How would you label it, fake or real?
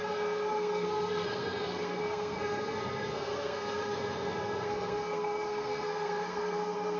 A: fake